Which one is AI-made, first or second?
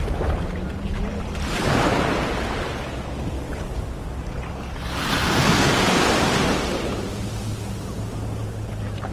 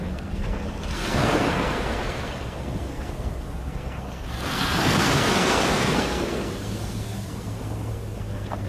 second